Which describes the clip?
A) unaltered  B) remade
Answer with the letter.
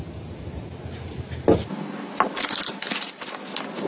A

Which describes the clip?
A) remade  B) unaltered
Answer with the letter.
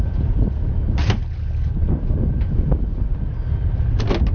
B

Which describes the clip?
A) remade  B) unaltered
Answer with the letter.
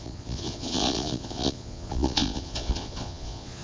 A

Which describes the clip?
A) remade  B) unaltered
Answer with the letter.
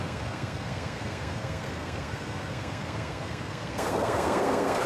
A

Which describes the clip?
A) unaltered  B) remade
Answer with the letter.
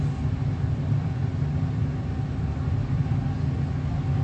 A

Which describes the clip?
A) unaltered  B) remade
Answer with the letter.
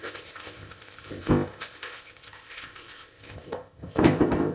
B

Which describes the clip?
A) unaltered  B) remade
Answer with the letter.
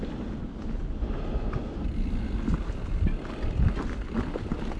A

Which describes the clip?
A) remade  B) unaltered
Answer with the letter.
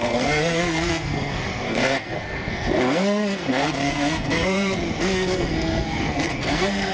A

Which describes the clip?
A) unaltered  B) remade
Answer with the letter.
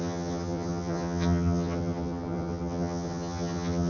B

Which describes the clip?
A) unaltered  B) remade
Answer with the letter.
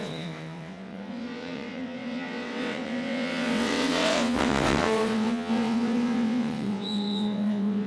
B